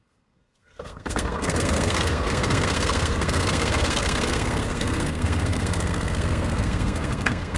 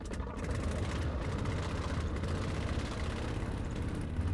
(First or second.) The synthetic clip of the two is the first